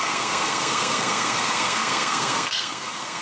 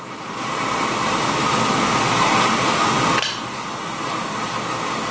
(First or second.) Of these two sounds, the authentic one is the second